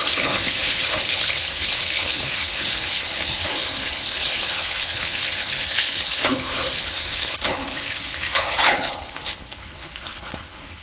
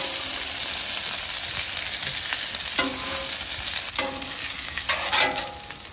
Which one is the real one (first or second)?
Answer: second